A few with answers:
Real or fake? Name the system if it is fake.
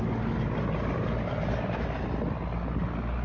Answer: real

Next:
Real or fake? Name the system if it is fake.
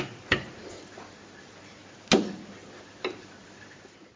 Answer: real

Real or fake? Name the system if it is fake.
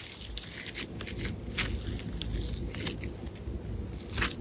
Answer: real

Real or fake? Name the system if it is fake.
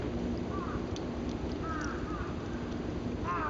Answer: real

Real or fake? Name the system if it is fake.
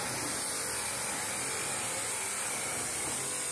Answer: real